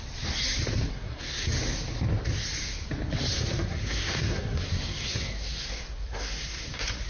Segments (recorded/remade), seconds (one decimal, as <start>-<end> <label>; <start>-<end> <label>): 0.0-0.9 recorded; 0.9-1.5 remade; 1.5-3.3 recorded; 3.3-7.1 remade